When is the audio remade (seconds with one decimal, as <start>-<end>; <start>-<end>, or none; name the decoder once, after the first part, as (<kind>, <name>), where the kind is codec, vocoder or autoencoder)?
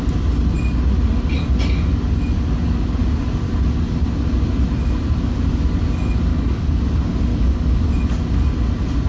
6.3-6.8 (codec, DAC); 7.3-7.9